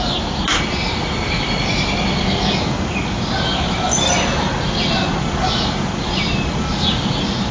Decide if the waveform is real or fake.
real